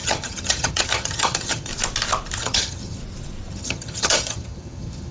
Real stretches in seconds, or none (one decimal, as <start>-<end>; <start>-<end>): 1.7-2.4; 3.0-3.5